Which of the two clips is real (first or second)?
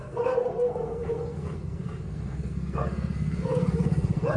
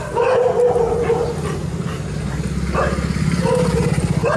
second